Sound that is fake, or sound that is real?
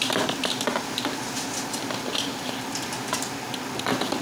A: real